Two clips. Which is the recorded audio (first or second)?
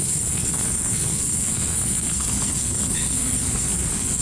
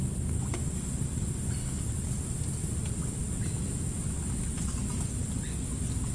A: second